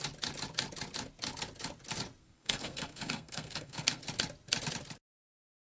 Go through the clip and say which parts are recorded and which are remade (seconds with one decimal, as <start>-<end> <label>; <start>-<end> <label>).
0.0-2.2 recorded; 2.2-4.0 remade; 4.0-5.7 recorded